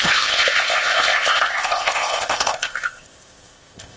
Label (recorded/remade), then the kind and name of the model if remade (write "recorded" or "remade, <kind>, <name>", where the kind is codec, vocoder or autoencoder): remade, codec, ZipCodec